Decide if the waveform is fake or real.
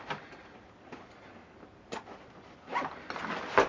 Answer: real